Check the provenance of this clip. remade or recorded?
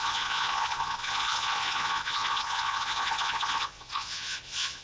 remade